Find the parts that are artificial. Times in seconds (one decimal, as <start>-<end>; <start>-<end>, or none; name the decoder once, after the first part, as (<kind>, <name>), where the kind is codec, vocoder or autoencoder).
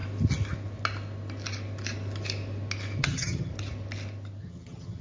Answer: 3.0-3.5 (vocoder, HiFi-GAN); 4.4-5.0